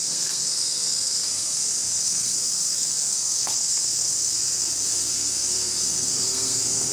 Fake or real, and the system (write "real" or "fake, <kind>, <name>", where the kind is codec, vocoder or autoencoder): fake, codec, SNAC